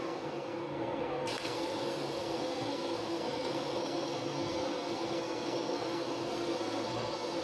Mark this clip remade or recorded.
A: remade